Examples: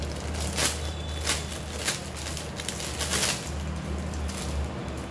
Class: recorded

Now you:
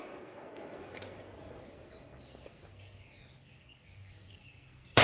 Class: remade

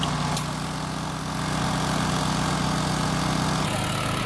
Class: recorded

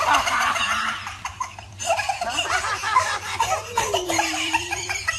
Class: remade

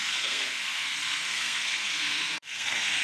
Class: remade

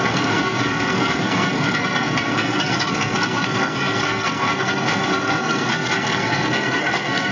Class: remade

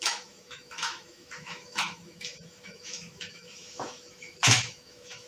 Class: remade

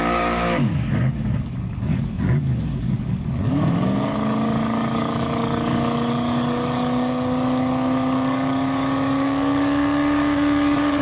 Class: remade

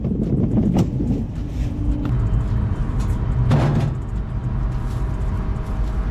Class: recorded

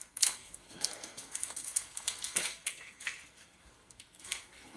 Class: remade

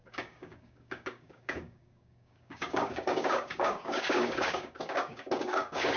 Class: remade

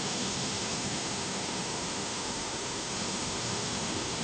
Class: remade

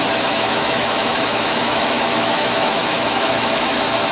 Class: remade